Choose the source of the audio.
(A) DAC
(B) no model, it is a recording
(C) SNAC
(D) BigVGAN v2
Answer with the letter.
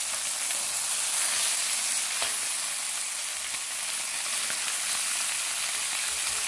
B